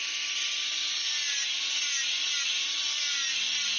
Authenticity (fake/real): real